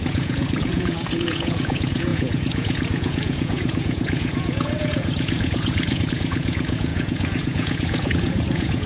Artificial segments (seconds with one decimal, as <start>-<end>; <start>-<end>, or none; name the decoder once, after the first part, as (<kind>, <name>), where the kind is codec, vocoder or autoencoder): 0.0-8.9 (vocoder, Vocos)